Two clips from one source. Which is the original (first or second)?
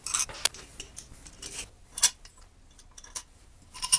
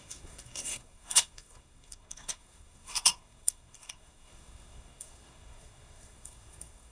first